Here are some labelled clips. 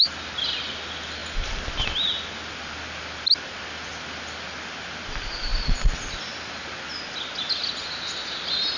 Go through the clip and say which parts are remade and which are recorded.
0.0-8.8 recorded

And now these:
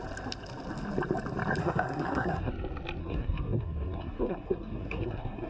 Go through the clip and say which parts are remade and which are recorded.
0.0-1.6 recorded; 1.6-2.5 remade; 2.5-3.0 recorded; 3.0-5.5 remade

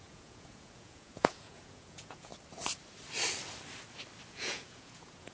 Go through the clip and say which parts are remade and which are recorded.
0.0-2.3 remade; 2.3-4.3 recorded; 4.3-5.3 remade

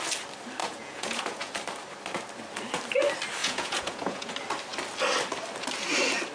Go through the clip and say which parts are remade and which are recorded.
0.0-0.6 recorded; 0.6-1.5 remade; 1.5-3.4 recorded; 3.4-4.3 remade; 4.3-6.3 recorded

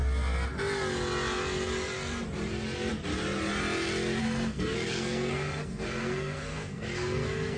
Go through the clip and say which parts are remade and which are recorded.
0.0-4.2 recorded; 4.2-7.6 remade